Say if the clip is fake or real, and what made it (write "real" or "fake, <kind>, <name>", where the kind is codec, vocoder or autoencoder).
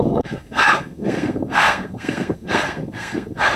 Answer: fake, codec, SNAC